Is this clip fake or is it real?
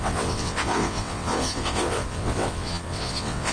fake